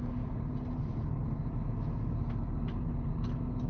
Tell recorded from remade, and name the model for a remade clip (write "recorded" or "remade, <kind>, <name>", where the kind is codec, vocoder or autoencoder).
recorded